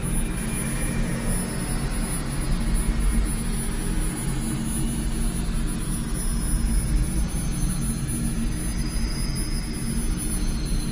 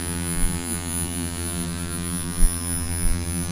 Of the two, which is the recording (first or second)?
first